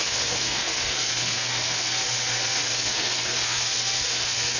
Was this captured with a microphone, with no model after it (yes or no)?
no